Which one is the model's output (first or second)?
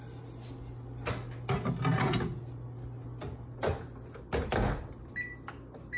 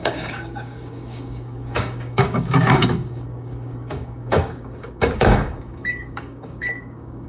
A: second